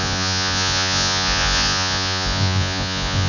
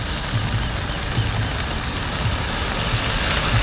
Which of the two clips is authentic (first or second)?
second